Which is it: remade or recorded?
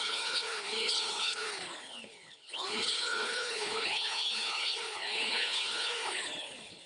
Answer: remade